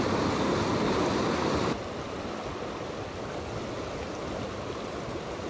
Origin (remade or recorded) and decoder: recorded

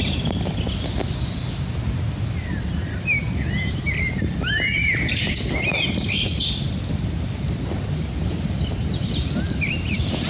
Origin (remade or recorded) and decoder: remade, vocoder, BigVGAN v2